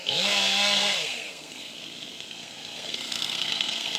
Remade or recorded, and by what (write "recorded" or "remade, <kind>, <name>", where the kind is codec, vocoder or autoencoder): remade, codec, SNAC